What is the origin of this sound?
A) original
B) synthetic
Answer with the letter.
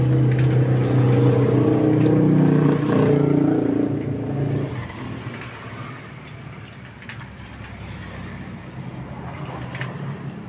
A